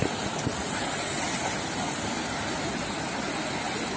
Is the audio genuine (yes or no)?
yes